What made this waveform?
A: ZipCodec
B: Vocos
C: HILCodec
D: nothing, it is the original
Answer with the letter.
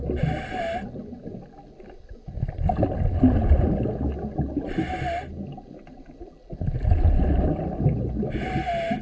D